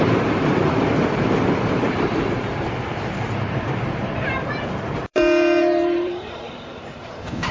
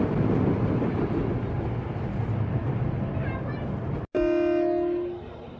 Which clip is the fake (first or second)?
first